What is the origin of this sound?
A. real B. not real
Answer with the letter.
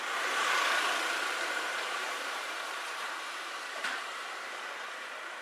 B